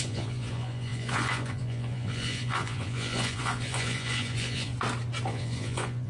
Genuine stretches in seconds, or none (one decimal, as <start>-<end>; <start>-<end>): 4.7-5.3